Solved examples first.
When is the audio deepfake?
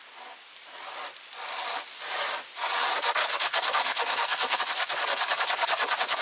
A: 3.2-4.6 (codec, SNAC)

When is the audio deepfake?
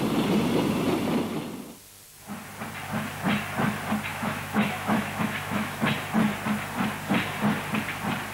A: 4.1-5.8 (autoencoder, DAC-VAE)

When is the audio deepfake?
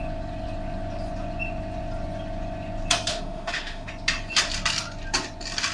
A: 3.1-3.9 (autoencoder, DAC-VAE)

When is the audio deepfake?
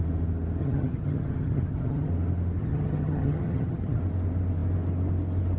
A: 0.6-2.1 (vocoder, HiFi-GAN); 2.6-4.0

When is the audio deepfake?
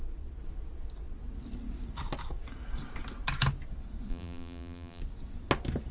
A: 4.1-5.0 (vocoder, BigVGAN v2)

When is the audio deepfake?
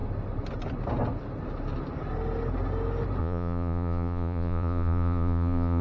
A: 3.2-5.8 (vocoder, Vocos)